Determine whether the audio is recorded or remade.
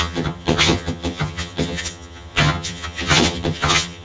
remade